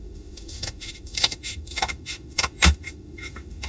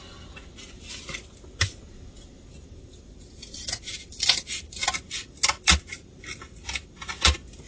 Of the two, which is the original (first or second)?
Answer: second